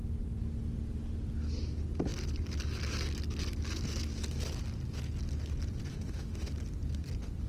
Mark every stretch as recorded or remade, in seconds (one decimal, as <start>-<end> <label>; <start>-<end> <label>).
0.0-5.9 recorded; 5.9-6.5 remade; 6.5-7.5 recorded